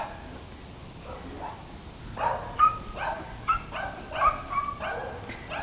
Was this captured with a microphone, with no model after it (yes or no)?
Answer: yes